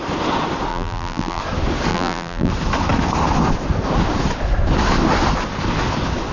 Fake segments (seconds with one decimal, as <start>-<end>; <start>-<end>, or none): 0.7-1.4; 1.9-2.5